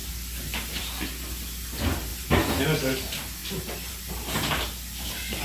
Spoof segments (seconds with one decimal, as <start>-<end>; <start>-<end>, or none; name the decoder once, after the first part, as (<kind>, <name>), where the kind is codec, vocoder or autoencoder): none